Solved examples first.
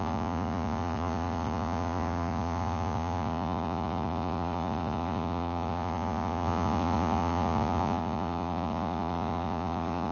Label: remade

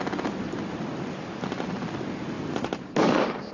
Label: recorded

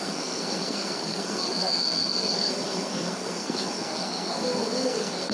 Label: remade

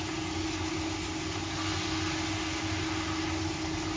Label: recorded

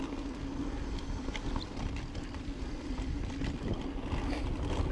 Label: recorded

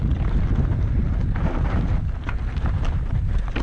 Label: recorded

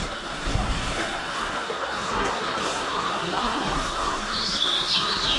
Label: remade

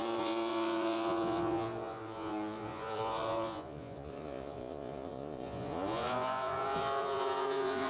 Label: remade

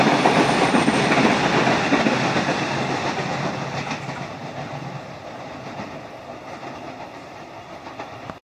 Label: recorded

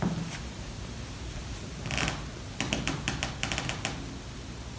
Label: recorded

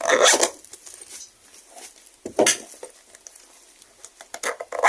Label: recorded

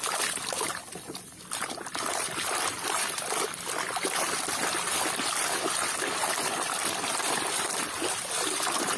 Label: remade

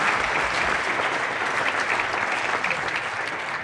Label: recorded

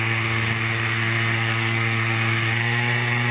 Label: remade